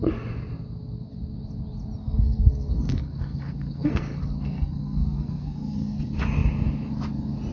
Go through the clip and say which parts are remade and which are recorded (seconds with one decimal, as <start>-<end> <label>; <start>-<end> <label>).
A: 0.0-2.0 recorded; 2.0-6.0 remade; 6.0-7.5 recorded